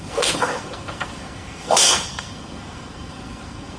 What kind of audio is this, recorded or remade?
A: remade